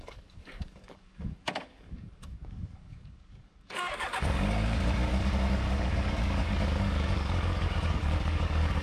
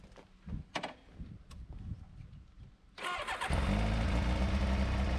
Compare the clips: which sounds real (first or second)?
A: second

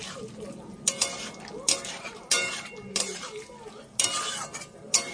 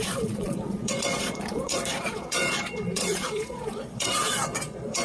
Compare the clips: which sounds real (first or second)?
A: first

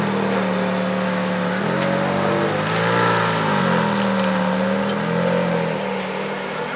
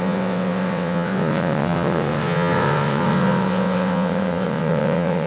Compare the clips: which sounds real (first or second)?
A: first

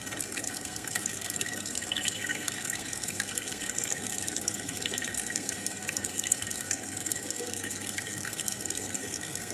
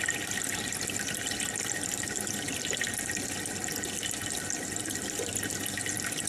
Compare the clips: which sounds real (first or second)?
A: second